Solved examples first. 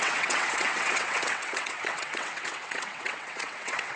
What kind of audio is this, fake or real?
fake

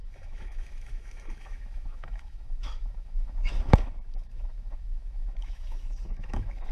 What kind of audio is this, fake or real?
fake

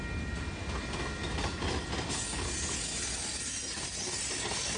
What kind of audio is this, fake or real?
real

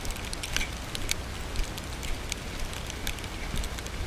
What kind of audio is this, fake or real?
real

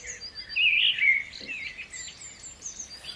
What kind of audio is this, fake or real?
real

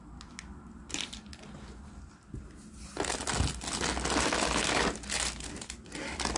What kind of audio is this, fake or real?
real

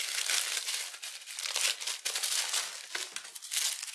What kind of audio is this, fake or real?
real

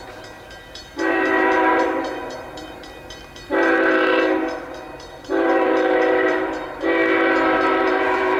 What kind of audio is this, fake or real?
fake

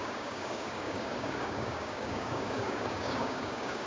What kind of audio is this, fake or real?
fake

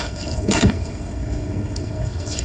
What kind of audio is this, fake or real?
fake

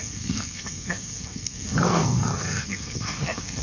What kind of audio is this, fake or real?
fake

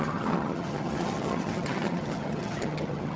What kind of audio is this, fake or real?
fake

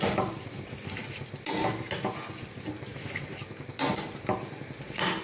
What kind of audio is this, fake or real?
real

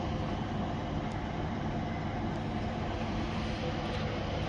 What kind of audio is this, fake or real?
real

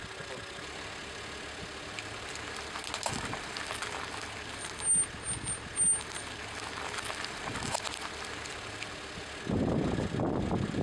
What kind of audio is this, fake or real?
real